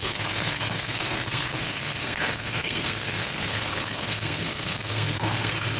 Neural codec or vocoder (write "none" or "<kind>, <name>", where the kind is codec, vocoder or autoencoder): codec, SNAC